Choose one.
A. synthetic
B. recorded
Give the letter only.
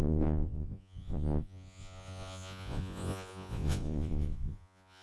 A